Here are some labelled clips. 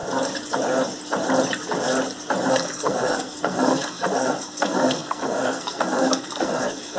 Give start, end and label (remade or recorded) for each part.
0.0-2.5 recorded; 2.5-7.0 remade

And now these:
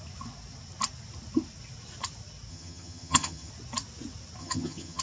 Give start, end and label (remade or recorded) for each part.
0.0-2.5 recorded; 2.5-3.5 remade; 3.5-4.4 recorded; 4.4-5.0 remade